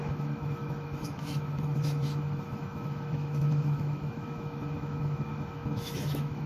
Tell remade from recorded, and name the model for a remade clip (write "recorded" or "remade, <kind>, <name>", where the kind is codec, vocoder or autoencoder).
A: remade, autoencoder, DAC-VAE